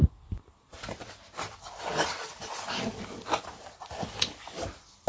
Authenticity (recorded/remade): recorded